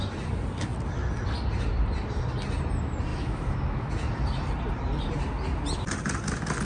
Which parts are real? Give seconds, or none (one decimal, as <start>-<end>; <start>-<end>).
0.0-3.1; 3.9-6.6